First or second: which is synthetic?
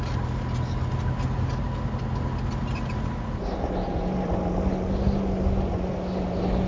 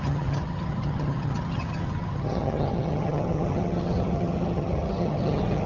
second